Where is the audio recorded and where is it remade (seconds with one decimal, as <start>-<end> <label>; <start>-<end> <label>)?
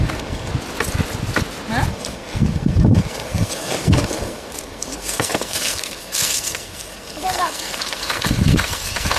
0.0-0.5 remade; 0.5-1.9 recorded; 1.9-9.2 remade